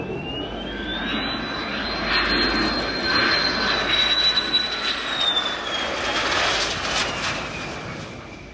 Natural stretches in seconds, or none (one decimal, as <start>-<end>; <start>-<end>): 0.0-8.5